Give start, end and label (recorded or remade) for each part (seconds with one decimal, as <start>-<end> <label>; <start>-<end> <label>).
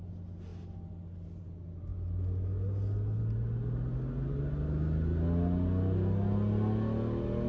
0.0-7.5 recorded